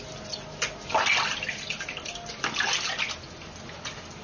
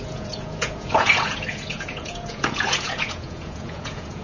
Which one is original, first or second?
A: first